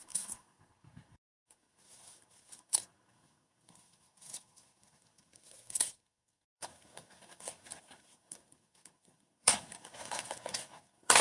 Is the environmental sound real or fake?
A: fake